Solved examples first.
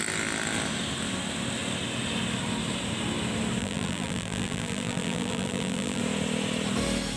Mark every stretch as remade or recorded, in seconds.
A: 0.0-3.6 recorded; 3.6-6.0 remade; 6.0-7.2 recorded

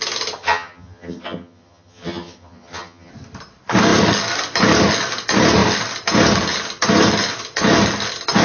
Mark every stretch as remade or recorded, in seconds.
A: 0.0-0.4 recorded; 0.4-3.1 remade; 3.1-8.4 recorded

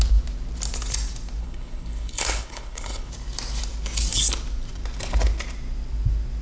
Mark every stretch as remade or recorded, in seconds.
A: 0.0-1.4 recorded; 1.4-3.1 remade; 3.1-6.4 recorded

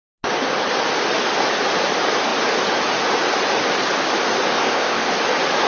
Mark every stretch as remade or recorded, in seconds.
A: 0.0-4.5 recorded; 4.5-5.1 remade; 5.1-5.7 recorded

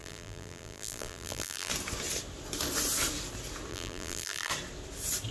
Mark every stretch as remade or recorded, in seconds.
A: 0.0-1.7 remade; 1.7-3.7 recorded; 3.7-4.5 remade; 4.5-5.3 recorded

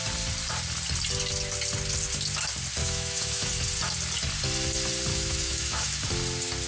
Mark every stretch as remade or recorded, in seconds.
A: 0.0-2.8 recorded; 2.8-3.5 remade; 3.5-5.1 recorded; 5.1-6.1 remade; 6.1-6.7 recorded

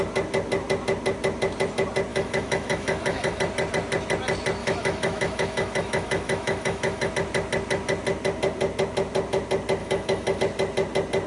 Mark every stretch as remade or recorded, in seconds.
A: 0.0-2.1 recorded; 2.1-3.4 remade; 3.4-4.6 recorded; 4.6-7.1 remade; 7.1-9.8 recorded; 9.8-10.4 remade; 10.4-11.3 recorded